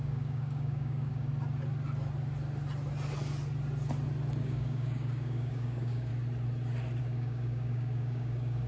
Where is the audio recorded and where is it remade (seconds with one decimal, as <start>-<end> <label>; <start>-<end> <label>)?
0.0-1.3 remade; 1.3-4.4 recorded; 4.4-6.1 remade; 6.1-7.0 recorded; 7.0-8.7 remade